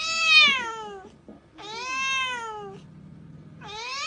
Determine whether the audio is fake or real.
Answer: real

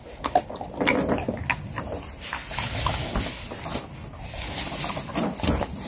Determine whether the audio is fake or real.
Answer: real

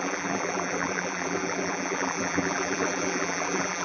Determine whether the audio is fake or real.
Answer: fake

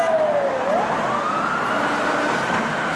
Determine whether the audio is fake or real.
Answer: real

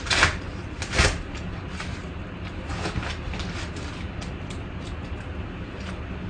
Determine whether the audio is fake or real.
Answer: fake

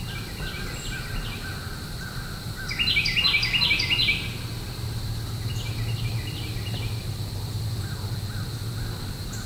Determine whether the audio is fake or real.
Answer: real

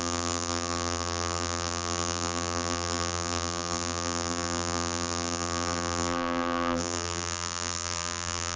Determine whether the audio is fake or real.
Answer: fake